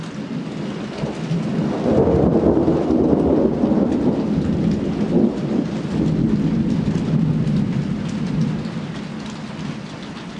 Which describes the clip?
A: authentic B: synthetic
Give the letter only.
A